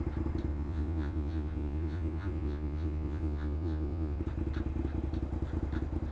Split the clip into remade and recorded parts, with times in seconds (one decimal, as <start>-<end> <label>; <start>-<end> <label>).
0.0-0.5 recorded; 0.5-4.2 remade; 4.2-6.1 recorded